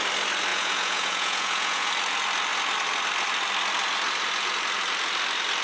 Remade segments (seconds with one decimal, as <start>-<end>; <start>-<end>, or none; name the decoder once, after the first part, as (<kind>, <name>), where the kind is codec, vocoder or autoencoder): 0.5-1.9 (vocoder, Vocos)